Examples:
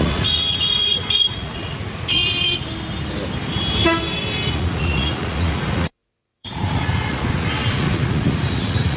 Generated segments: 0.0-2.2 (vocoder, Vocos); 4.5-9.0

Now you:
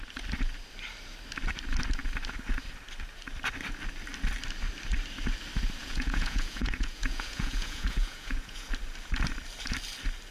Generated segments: 5.8-8.7 (vocoder, Vocos)

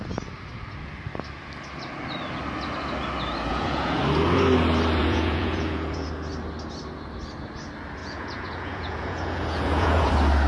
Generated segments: 3.5-4.0 (vocoder, Vocos); 5.0-6.1; 8.0-10.1

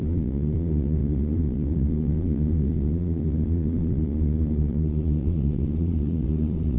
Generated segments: 0.0-6.8 (vocoder, Vocos)

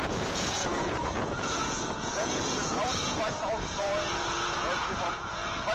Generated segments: 0.0-5.7 (vocoder, Vocos)

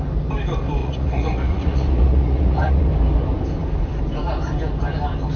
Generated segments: 0.8-2.9 (vocoder, Vocos)